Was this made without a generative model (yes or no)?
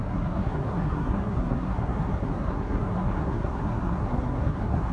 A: no